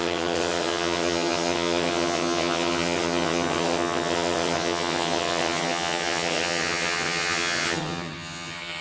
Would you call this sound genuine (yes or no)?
no